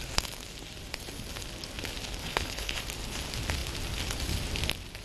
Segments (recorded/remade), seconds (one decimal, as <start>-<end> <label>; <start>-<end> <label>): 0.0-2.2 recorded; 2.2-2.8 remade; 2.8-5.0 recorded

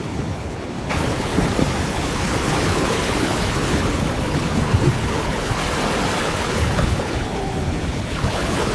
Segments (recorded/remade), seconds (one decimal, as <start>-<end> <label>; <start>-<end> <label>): 0.0-1.3 remade; 1.3-1.9 recorded; 1.9-5.6 remade; 5.6-6.2 recorded; 6.2-8.7 remade

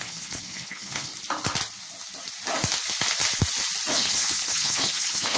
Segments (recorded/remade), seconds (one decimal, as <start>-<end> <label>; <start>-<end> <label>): 0.0-1.1 remade; 1.1-3.9 recorded; 3.9-5.4 remade

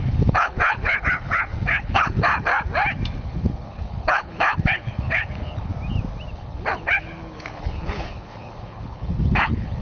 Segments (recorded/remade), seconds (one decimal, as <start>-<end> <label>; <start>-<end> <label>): 0.0-2.5 remade; 2.5-3.2 recorded; 3.2-5.7 remade; 5.7-6.3 recorded; 6.3-9.8 remade

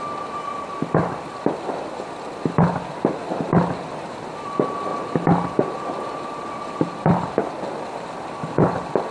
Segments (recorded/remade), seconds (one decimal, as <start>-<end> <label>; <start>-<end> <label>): 0.0-9.1 recorded

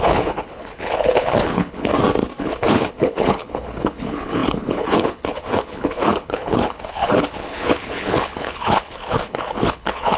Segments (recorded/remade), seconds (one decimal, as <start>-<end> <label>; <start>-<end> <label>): 0.0-1.9 remade; 1.9-2.4 recorded; 2.4-10.2 remade

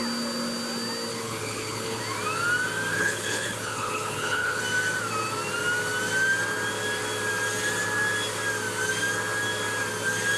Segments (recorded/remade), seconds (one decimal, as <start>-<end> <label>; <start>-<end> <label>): 0.0-1.1 recorded; 1.1-2.0 remade; 2.0-2.9 recorded; 2.9-4.6 remade; 4.6-10.4 recorded

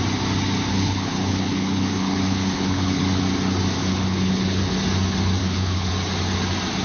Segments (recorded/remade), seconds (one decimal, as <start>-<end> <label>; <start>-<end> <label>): 0.0-0.7 recorded; 0.7-3.2 remade; 3.2-3.8 recorded; 3.8-4.7 remade; 4.7-5.4 recorded; 5.4-5.9 remade; 5.9-6.8 recorded